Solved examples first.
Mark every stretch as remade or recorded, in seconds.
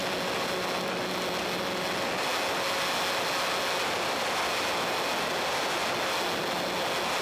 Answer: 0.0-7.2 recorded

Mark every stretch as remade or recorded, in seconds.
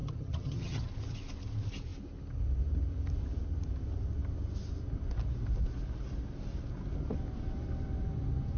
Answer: 0.0-0.9 remade; 0.9-8.6 recorded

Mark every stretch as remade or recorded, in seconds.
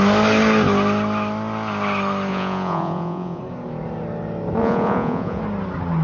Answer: 0.0-2.3 recorded; 2.3-3.4 remade; 3.4-4.6 recorded; 4.6-5.4 remade; 5.4-6.0 recorded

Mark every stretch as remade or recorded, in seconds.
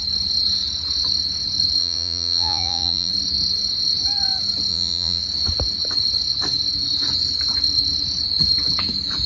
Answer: 0.0-1.8 recorded; 1.8-3.1 remade; 3.1-4.7 recorded; 4.7-5.2 remade; 5.2-9.3 recorded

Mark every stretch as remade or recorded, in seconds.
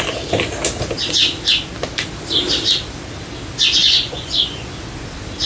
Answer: 0.0-3.8 recorded; 3.8-4.7 remade; 4.7-5.5 recorded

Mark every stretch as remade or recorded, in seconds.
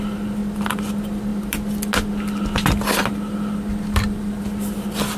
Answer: 0.0-5.2 recorded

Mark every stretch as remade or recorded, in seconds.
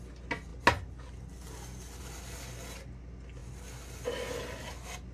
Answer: 0.0-5.1 recorded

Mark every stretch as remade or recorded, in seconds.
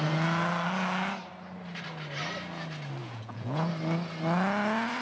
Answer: 0.0-3.0 recorded; 3.0-3.7 remade; 3.7-5.0 recorded